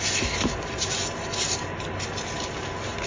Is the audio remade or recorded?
recorded